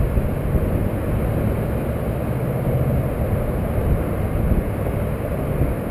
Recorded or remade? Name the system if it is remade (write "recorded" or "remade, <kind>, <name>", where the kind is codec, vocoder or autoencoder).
recorded